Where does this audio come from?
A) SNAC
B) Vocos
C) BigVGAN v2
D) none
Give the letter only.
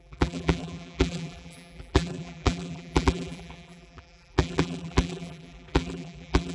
C